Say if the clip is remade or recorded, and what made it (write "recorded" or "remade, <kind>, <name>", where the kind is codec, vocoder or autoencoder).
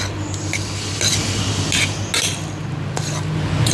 recorded